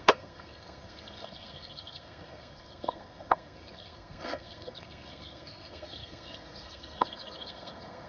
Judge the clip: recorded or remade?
remade